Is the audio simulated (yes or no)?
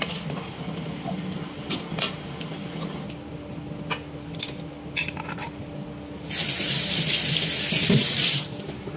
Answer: no